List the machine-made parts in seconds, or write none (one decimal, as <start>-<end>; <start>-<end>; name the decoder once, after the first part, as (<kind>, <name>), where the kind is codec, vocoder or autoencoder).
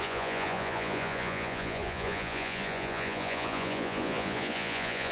0.0-5.1 (vocoder, Vocos)